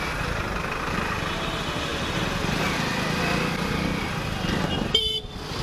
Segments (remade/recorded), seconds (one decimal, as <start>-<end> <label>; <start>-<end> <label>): 0.0-5.6 recorded